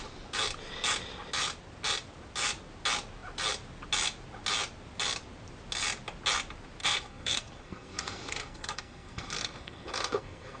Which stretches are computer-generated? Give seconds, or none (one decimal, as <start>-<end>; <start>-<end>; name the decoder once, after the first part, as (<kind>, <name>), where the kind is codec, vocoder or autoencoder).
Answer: 6.8-10.6 (codec, SNAC)